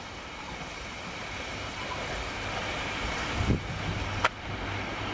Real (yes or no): yes